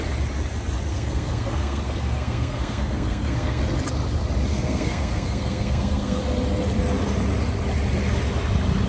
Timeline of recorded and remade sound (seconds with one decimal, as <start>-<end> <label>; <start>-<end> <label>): 0.0-0.9 recorded; 0.9-3.6 remade; 3.6-4.5 recorded; 4.5-6.2 remade; 6.2-8.9 recorded